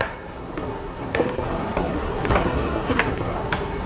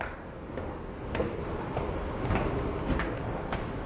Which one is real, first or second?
second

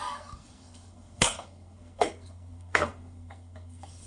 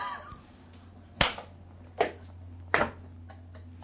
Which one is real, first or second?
second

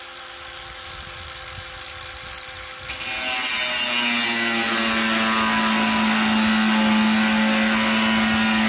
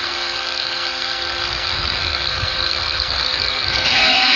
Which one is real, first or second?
first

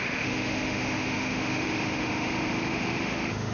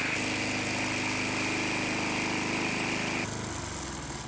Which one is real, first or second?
second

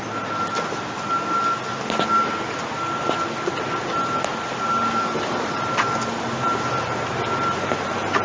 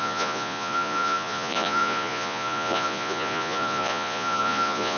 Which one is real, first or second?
first